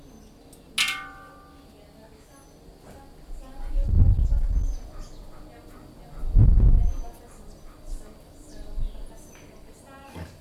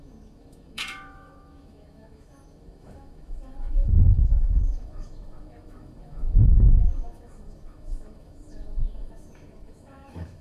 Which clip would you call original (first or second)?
first